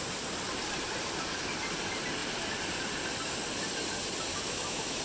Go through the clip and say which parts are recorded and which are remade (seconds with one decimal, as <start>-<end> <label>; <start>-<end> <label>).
0.0-4.3 recorded; 4.3-5.0 remade